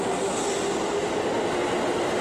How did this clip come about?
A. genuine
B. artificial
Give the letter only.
A